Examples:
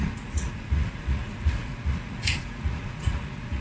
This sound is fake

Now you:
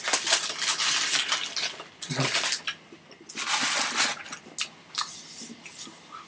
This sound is real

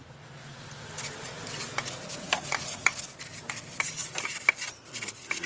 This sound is real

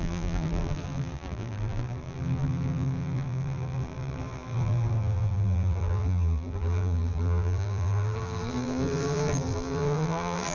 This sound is fake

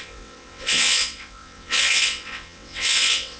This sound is fake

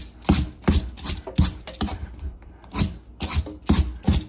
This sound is real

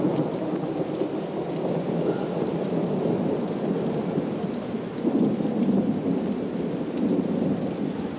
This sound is real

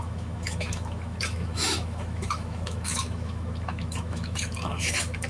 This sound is fake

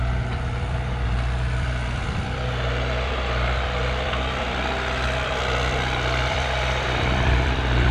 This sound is fake